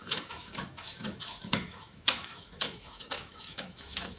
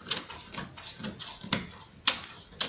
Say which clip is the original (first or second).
second